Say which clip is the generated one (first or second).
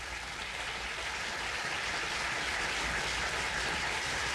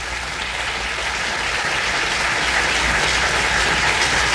first